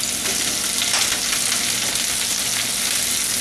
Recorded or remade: recorded